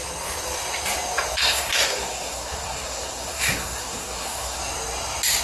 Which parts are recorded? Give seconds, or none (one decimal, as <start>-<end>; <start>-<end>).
0.0-1.4; 4.6-5.4